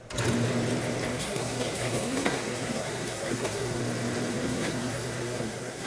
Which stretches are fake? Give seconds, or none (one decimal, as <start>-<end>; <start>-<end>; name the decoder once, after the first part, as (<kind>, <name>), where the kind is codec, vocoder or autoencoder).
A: 1.1-3.8 (codec, SNAC); 4.3-5.9